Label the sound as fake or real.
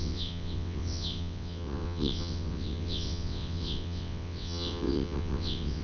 fake